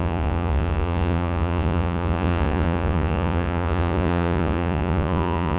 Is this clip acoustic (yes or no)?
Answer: no